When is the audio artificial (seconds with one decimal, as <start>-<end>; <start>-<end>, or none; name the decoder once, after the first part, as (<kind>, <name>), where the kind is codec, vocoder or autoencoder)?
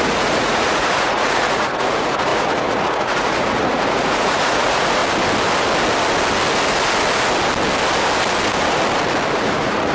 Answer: 0.0-5.0 (vocoder, Vocos); 9.3-9.9